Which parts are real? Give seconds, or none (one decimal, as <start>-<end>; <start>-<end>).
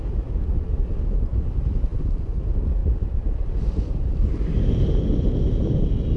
0.0-2.8; 4.3-6.2